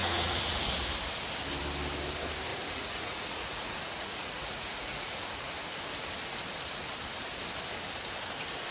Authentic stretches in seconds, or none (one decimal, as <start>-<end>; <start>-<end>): 0.7-2.5; 5.5-8.7

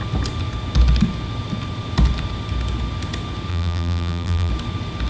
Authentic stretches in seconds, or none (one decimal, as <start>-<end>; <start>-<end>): 0.0-3.5; 4.5-5.1

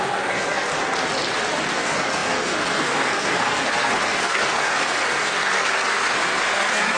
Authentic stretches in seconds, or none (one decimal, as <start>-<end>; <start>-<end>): 0.7-1.7

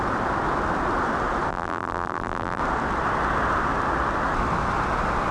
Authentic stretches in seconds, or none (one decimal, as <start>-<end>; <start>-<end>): 0.0-1.5; 2.6-5.3

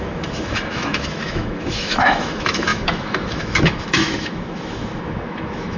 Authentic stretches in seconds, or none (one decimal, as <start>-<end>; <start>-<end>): none

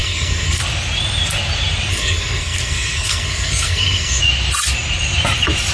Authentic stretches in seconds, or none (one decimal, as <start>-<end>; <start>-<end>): 0.6-1.9; 4.2-5.7

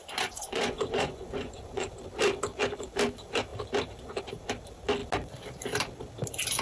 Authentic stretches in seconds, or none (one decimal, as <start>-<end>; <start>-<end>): 1.9-6.6

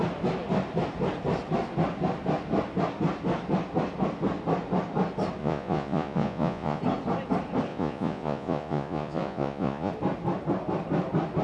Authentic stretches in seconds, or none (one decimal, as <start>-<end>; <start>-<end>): 0.0-5.4; 6.8-7.7; 9.9-11.4